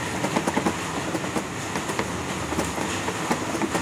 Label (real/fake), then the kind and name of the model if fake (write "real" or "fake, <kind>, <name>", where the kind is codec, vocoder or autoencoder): real